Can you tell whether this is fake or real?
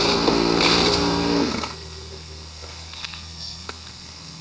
fake